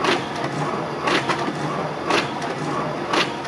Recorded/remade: recorded